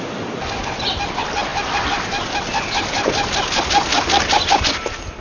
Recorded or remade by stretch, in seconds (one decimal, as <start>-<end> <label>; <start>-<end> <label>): 0.0-5.2 recorded